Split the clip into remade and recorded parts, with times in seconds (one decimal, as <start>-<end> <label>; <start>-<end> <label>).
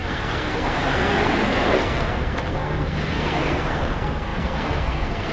0.0-5.3 remade